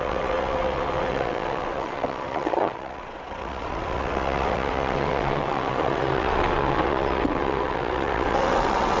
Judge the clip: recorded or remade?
remade